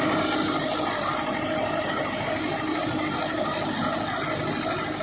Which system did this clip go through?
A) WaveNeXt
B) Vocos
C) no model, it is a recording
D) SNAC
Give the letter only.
C